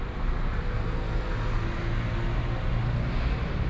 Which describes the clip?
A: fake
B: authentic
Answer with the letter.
B